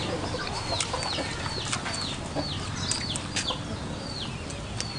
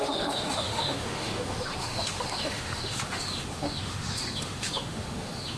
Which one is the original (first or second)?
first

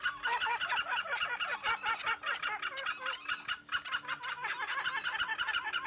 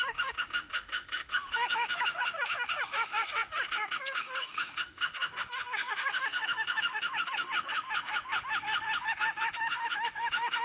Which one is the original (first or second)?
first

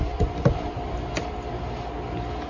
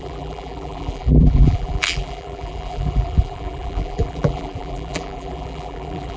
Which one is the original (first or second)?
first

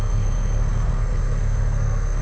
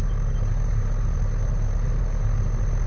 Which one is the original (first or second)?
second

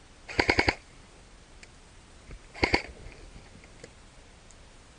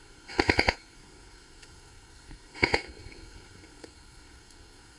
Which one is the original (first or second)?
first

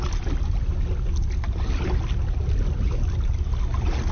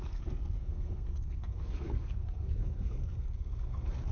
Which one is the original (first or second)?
first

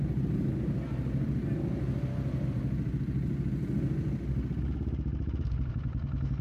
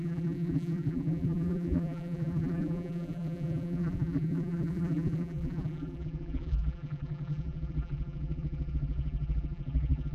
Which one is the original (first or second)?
first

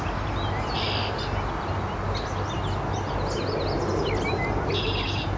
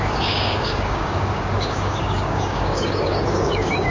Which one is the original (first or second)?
first